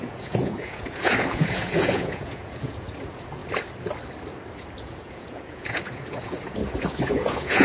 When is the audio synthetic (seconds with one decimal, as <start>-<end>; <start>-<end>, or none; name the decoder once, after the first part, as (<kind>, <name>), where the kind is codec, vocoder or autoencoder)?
0.0-3.4 (vocoder, Vocos); 4.8-7.6

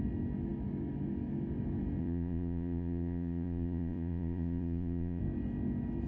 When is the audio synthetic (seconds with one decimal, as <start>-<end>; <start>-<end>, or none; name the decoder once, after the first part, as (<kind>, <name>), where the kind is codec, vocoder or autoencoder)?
2.0-5.2 (vocoder, Vocos)

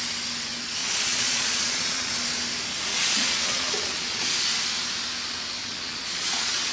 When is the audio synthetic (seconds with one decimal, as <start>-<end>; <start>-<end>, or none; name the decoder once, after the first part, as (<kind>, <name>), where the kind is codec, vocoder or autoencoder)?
0.8-2.1 (vocoder, Vocos); 2.9-4.3; 5.6-6.7

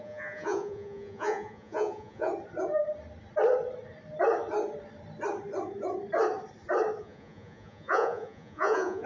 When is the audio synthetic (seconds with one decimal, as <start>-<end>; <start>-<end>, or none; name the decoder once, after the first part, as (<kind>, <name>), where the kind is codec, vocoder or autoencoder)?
0.0-2.3 (vocoder, Vocos); 7.0-9.1

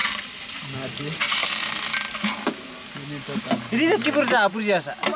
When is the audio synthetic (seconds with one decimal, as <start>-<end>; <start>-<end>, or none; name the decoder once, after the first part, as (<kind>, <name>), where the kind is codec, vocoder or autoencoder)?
none

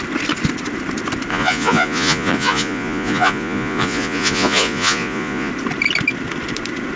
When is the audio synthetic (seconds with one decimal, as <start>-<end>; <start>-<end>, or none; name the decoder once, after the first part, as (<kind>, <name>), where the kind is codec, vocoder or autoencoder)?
1.3-5.5 (vocoder, Vocos)